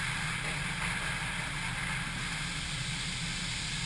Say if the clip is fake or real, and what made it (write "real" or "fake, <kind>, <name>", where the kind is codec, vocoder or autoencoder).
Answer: real